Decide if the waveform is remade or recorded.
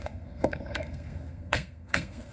remade